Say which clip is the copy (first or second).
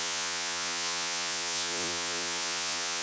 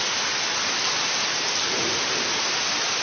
first